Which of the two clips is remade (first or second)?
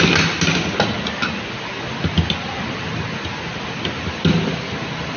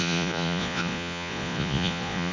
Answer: second